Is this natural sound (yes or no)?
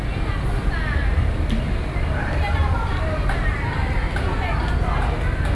yes